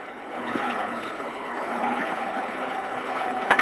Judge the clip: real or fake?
fake